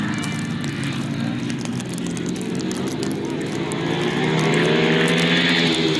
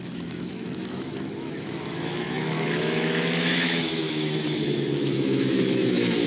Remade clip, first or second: second